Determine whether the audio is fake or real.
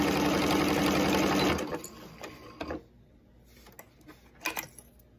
real